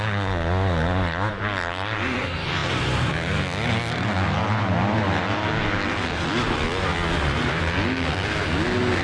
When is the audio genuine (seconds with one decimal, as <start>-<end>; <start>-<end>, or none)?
0.0-9.0